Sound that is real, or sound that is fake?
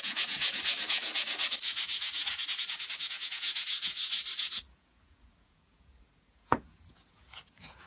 fake